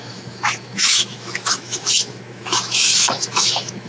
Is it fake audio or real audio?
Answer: fake